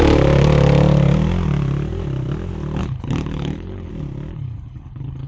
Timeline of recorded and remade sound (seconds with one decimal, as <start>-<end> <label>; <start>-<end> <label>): 0.0-2.8 recorded; 2.8-3.9 remade; 3.9-4.3 recorded; 4.3-5.3 remade